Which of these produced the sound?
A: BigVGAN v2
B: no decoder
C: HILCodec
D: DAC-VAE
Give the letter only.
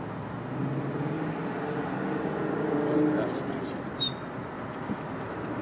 B